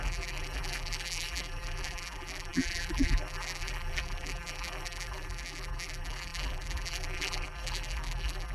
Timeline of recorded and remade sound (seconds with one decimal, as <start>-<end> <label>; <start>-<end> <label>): 0.0-8.5 remade